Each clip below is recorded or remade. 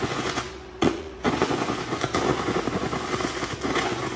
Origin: remade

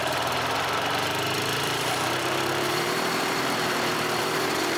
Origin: remade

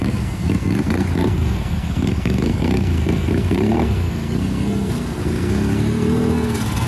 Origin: remade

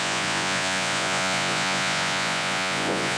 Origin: remade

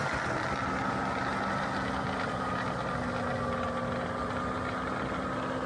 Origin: recorded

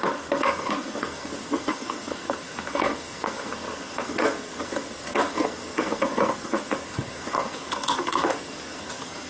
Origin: remade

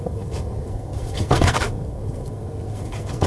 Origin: remade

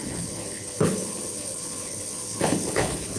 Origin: remade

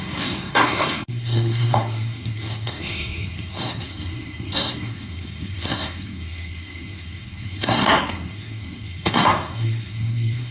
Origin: remade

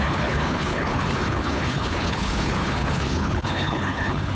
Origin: remade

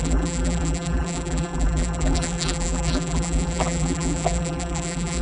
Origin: remade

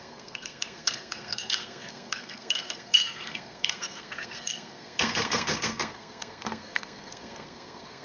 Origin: remade